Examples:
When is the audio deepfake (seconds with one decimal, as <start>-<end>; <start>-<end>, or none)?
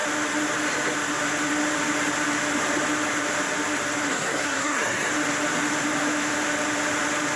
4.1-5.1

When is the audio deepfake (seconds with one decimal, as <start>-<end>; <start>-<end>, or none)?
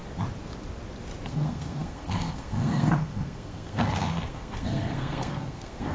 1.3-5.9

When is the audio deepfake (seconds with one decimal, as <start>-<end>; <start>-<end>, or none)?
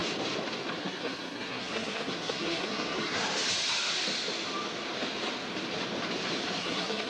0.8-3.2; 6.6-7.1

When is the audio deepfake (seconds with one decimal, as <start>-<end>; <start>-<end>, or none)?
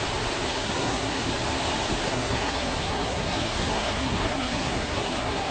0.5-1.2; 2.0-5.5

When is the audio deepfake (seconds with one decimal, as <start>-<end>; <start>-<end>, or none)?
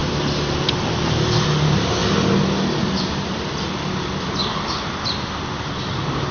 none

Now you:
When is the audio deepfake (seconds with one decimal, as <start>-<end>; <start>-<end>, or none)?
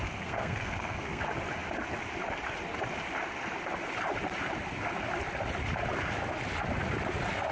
0.0-1.2